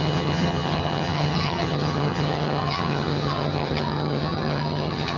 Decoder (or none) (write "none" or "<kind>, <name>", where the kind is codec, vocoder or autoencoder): vocoder, HiFi-GAN